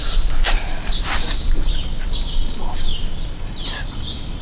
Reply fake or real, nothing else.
real